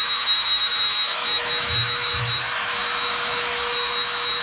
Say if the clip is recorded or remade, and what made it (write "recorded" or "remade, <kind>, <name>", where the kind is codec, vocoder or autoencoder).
remade, autoencoder, DAC-VAE